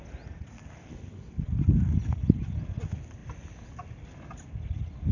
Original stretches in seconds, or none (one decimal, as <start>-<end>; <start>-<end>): 0.0-0.9; 1.4-5.1